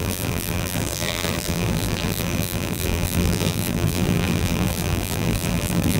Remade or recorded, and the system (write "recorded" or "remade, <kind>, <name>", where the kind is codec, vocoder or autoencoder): remade, vocoder, BigVGAN v2